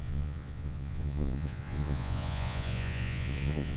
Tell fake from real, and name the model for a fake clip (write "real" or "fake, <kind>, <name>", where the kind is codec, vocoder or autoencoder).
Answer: fake, vocoder, Vocos